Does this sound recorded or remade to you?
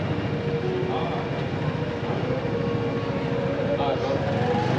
recorded